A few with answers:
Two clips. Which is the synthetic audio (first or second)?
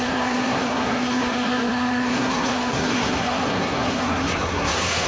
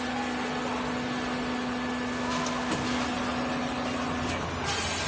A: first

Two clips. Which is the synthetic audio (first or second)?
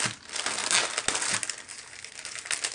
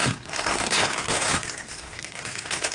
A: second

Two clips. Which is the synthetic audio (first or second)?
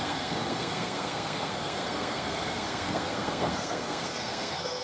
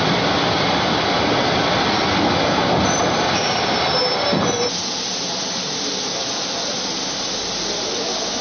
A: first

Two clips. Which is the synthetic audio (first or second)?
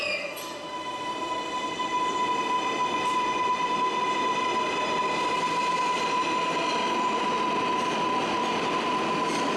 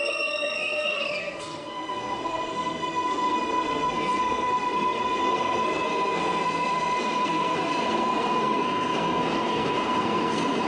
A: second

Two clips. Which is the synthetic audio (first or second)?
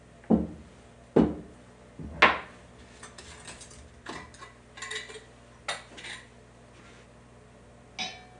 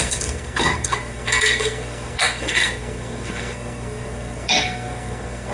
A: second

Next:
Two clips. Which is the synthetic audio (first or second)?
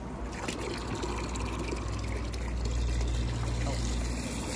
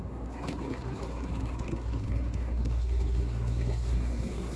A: second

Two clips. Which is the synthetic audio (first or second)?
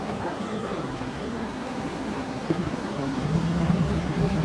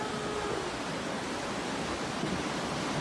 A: first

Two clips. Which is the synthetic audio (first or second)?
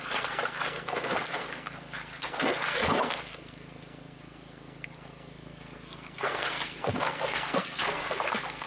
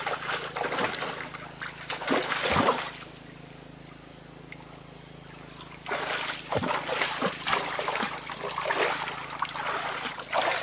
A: first